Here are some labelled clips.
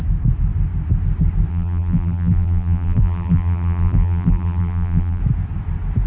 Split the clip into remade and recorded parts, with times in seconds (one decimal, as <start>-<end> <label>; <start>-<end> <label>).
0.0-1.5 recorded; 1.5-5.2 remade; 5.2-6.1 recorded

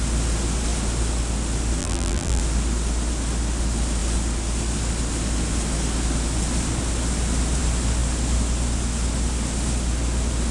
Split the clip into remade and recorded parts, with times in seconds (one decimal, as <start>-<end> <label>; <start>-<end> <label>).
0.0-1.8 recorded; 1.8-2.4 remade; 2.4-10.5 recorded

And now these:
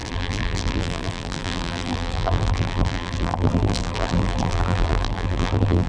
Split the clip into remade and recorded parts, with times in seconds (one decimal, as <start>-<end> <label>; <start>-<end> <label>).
0.0-5.9 remade

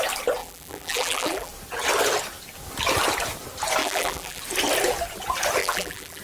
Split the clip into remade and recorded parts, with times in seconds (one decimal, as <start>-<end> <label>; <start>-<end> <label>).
0.0-0.4 recorded; 0.4-1.5 remade; 1.5-3.8 recorded; 3.8-4.4 remade; 4.4-5.6 recorded; 5.6-6.2 remade

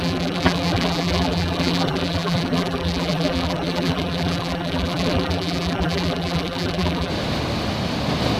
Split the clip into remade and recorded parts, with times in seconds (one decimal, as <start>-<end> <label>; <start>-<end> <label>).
0.0-7.1 remade; 7.1-8.4 recorded

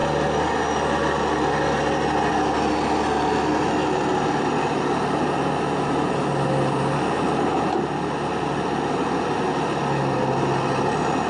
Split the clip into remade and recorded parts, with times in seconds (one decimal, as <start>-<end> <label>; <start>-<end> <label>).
0.0-11.3 recorded